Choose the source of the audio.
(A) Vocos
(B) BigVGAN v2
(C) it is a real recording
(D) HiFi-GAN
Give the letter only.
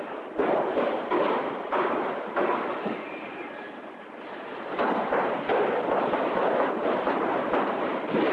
B